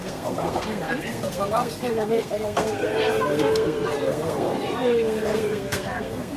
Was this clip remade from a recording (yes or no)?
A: yes